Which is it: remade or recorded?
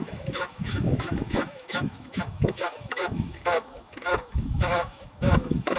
remade